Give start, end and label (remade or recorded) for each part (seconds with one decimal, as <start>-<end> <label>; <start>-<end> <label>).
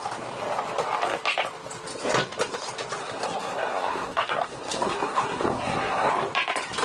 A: 0.0-3.0 recorded; 3.0-6.1 remade; 6.1-6.8 recorded